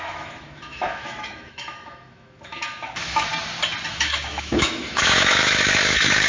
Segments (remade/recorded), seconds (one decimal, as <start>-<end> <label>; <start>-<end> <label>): 0.0-3.3 remade; 3.3-3.9 recorded; 3.9-6.3 remade

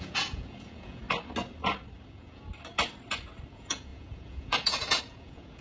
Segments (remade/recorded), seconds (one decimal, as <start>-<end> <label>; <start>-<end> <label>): 0.0-1.0 remade; 1.0-2.1 recorded; 2.1-2.5 remade; 2.5-3.5 recorded; 3.5-5.6 remade